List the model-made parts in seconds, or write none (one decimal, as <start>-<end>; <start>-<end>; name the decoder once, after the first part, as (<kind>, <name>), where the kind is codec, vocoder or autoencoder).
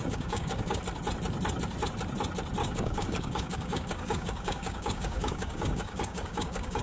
0.0-0.8 (codec, DAC); 2.6-6.8